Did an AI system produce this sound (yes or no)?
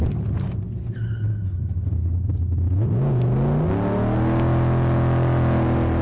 no